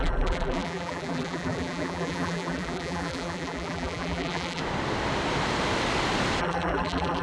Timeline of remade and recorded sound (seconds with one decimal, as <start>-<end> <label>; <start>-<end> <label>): 0.0-4.6 remade; 4.6-6.4 recorded; 6.4-7.2 remade